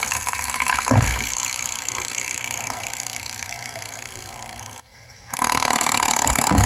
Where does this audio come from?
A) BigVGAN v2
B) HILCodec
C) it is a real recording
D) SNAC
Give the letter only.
D